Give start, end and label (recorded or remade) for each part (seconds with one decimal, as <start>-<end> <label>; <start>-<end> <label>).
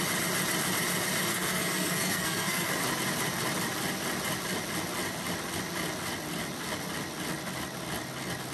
0.0-1.3 recorded; 1.3-2.7 remade; 2.7-8.5 recorded